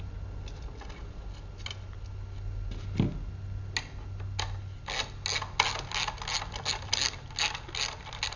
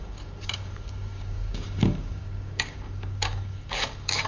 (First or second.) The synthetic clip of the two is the second